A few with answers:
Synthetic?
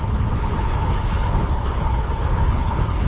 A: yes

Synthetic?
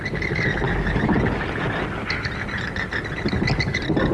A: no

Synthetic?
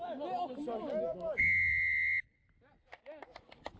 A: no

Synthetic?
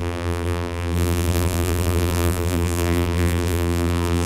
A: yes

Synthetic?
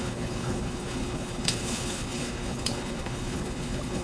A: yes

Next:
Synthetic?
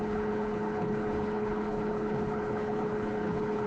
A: yes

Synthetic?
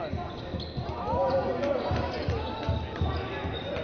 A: no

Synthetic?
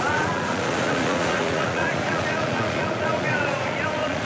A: yes